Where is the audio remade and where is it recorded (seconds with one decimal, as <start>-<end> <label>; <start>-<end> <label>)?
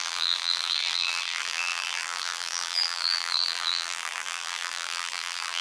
0.0-5.6 remade